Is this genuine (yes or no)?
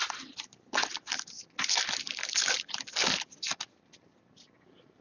yes